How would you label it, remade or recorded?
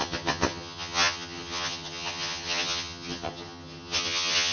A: remade